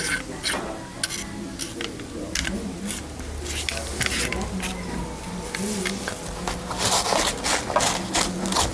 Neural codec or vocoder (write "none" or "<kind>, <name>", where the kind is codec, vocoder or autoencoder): none